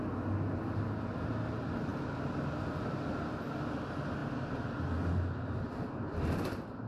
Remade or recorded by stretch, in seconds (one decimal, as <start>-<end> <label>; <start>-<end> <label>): 0.0-6.9 recorded